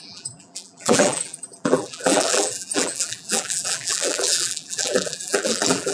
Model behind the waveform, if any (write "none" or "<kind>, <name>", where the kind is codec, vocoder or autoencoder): vocoder, BigVGAN v2